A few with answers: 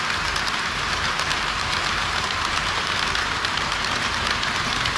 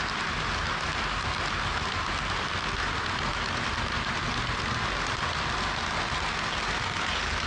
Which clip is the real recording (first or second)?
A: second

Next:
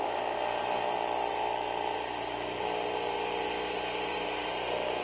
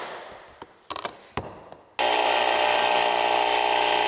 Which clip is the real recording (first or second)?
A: second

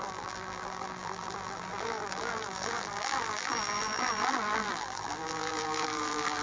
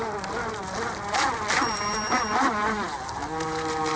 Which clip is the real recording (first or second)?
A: second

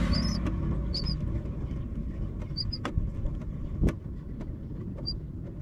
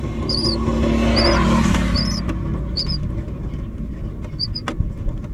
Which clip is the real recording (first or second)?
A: second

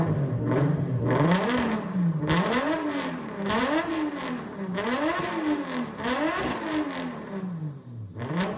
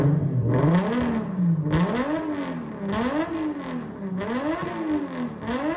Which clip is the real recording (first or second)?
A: second